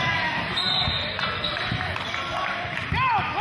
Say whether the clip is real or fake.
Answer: real